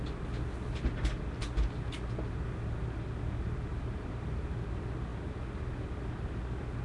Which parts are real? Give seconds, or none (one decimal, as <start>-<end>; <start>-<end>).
0.0-6.8